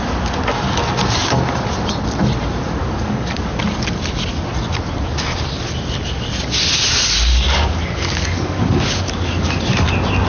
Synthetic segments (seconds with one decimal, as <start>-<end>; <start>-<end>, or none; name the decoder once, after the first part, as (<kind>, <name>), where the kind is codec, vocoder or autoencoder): 2.8-3.6 (codec, DAC); 7.3-9.9